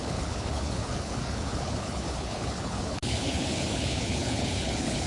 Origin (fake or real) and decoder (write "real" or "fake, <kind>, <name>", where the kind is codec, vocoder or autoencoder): fake, codec, HILCodec